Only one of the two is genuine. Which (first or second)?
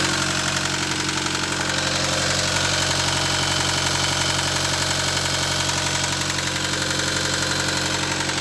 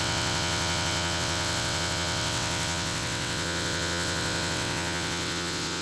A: first